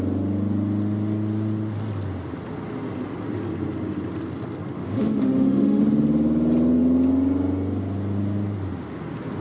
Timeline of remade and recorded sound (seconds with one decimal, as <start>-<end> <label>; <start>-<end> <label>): 0.0-4.8 recorded; 4.8-5.8 remade; 5.8-9.4 recorded